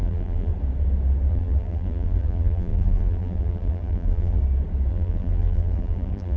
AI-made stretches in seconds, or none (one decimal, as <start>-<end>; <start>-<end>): 0.0-0.5; 1.3-4.4; 4.9-6.4